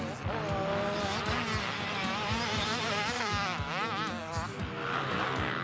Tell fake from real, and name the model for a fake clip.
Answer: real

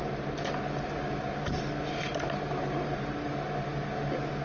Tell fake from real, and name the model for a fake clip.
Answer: real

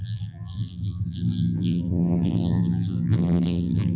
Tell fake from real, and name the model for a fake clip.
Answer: fake, vocoder, BigVGAN v2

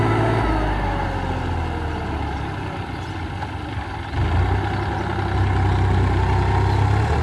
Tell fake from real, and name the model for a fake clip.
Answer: real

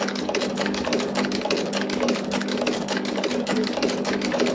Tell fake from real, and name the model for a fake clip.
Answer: fake, codec, DAC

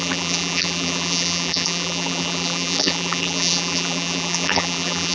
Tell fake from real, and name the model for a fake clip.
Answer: fake, vocoder, BigVGAN v2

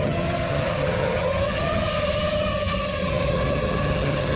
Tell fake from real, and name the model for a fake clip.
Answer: fake, vocoder, HiFi-GAN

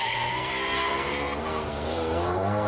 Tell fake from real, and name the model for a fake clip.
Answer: fake, codec, SNAC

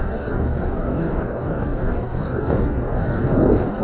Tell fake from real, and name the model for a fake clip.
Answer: fake, codec, DAC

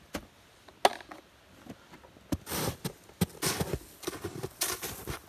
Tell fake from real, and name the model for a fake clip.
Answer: real